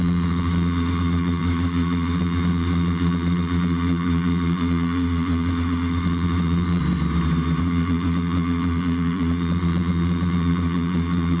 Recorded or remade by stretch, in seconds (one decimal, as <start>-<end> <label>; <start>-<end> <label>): 0.0-6.8 remade; 6.8-7.6 recorded; 7.6-11.4 remade